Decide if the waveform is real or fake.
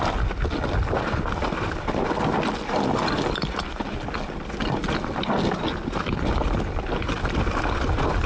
real